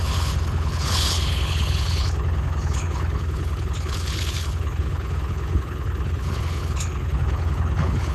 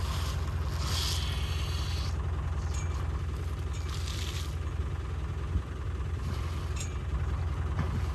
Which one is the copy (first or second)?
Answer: first